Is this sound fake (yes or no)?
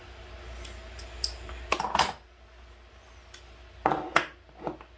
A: no